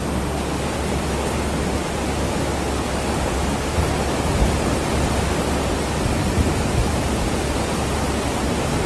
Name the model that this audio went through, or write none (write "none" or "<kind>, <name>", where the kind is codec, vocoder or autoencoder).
none